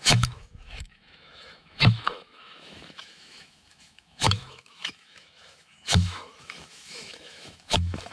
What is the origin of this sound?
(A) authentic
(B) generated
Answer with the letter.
B